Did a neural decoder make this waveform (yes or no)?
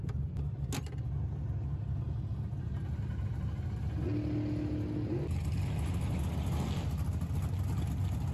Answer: no